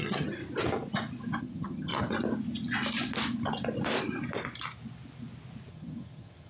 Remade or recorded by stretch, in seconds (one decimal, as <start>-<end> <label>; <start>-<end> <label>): 0.0-0.4 remade; 0.4-1.4 recorded; 1.4-1.9 remade; 1.9-5.7 recorded; 5.7-6.5 remade